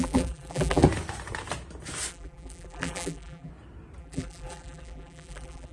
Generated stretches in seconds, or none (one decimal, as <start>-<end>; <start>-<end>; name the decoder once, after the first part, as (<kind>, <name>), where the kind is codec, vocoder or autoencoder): 0.0-0.8 (vocoder, BigVGAN v2); 2.1-3.5; 4.0-5.7